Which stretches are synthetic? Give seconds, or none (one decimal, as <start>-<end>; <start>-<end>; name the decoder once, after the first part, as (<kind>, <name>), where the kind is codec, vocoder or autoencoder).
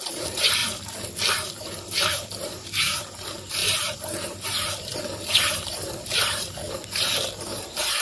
0.0-0.6 (vocoder, BigVGAN v2); 1.3-8.0